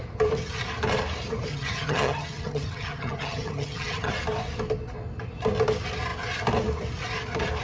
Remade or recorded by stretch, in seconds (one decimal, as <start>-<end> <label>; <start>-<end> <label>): 0.0-1.5 recorded; 1.5-4.1 remade; 4.1-7.6 recorded

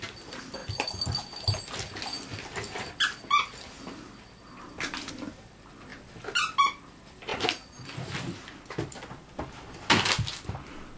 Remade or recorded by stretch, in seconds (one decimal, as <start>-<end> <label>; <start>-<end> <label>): 0.0-11.0 recorded

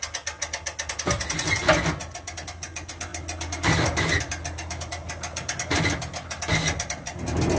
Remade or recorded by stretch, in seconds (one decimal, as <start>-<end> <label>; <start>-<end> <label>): 0.0-7.6 recorded

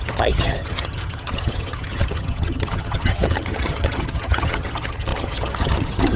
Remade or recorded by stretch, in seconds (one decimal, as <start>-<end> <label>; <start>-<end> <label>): 0.0-6.2 remade

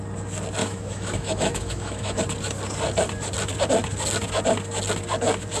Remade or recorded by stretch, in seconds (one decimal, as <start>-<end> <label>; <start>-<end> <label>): 0.0-0.6 recorded; 0.6-2.2 remade; 2.2-5.6 recorded